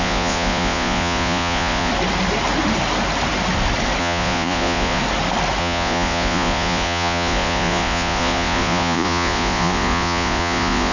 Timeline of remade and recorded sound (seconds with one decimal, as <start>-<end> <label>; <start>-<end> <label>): 0.0-1.9 remade; 1.9-4.0 recorded; 4.0-5.0 remade; 5.0-5.6 recorded; 5.6-10.9 remade